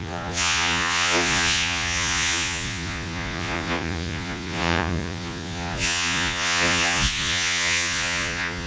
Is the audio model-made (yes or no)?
yes